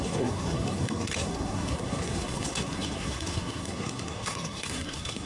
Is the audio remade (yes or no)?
yes